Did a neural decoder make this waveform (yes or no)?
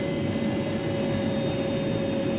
no